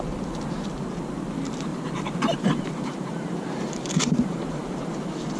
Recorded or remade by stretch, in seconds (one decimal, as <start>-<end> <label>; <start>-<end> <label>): 0.0-1.7 recorded; 1.7-4.7 remade; 4.7-5.4 recorded